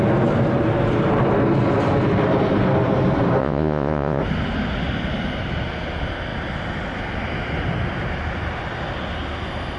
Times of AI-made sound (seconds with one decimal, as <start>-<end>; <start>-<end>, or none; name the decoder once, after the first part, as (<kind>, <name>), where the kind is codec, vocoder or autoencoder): 3.4-4.2 (vocoder, Vocos)